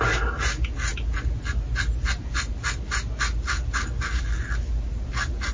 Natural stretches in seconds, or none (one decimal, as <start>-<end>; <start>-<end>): 0.0-5.5